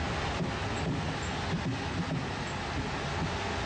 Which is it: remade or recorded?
recorded